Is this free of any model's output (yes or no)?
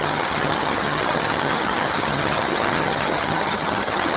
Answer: no